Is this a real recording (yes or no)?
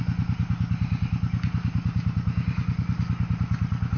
yes